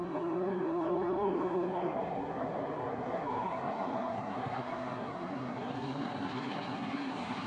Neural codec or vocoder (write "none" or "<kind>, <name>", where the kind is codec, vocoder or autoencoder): codec, SNAC